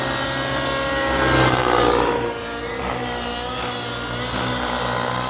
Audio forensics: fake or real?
real